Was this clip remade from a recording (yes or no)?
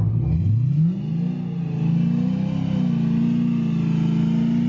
no